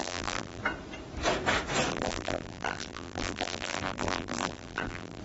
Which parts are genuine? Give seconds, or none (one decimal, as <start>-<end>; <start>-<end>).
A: 0.6-1.9